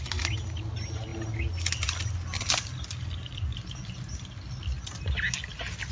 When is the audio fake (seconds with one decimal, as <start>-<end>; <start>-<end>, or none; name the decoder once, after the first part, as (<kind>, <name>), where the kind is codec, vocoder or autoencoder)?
none